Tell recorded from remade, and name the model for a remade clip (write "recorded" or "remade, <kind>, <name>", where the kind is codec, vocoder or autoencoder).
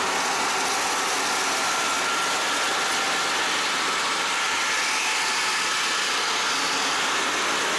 recorded